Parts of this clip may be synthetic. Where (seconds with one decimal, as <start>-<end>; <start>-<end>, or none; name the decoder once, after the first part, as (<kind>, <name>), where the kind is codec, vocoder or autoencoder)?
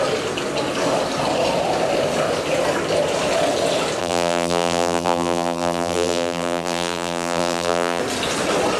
4.0-8.0 (vocoder, BigVGAN v2)